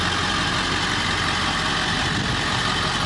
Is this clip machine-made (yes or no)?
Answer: no